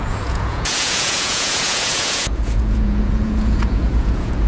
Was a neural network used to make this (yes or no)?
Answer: yes